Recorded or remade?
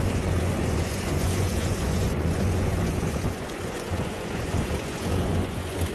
remade